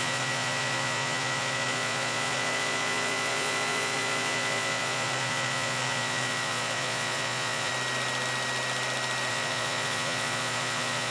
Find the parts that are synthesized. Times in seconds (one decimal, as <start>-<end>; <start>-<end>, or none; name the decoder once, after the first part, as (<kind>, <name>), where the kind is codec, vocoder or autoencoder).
0.0-7.7 (vocoder, Vocos); 9.3-11.1

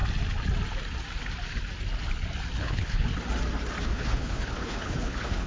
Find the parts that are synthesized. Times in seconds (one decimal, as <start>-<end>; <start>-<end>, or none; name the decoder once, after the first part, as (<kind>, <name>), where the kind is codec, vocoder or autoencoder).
2.6-3.1 (codec, HILCodec); 3.8-5.5

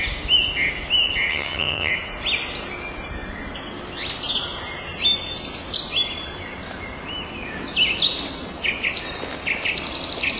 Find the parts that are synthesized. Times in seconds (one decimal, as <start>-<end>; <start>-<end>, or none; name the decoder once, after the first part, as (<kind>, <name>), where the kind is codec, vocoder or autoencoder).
1.3-1.9 (vocoder, HiFi-GAN)

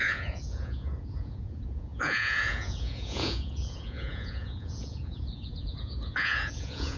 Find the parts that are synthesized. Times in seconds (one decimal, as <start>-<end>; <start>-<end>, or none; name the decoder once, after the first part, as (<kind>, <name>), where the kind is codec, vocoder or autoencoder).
0.0-7.0 (vocoder, Vocos)

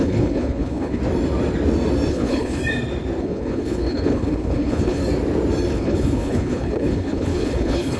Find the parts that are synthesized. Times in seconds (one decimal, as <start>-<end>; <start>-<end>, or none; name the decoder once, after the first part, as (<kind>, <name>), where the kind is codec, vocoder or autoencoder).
0.0-1.0 (codec, HILCodec); 2.1-2.6; 3.2-5.0; 5.7-8.0

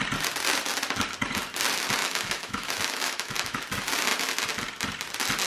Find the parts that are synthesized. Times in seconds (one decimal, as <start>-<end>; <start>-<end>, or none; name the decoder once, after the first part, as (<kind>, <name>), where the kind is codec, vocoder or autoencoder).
2.0-3.6 (autoencoder, DAC-VAE)

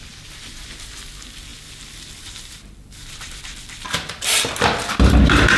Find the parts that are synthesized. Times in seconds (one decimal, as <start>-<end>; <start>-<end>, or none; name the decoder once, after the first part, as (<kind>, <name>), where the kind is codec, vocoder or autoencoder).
none